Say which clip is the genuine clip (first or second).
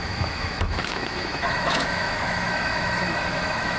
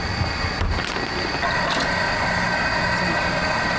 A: second